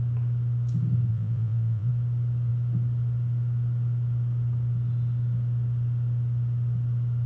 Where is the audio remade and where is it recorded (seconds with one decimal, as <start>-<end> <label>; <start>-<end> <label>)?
0.0-1.1 recorded; 1.1-1.9 remade; 1.9-7.3 recorded